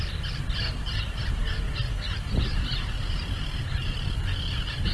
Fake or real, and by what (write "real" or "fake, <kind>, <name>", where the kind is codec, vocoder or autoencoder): real